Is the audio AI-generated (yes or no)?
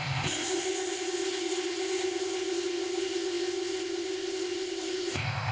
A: yes